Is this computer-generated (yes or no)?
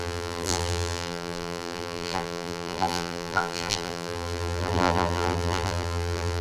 yes